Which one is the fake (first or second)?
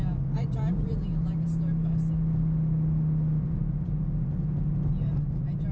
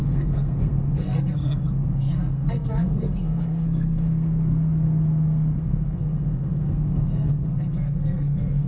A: second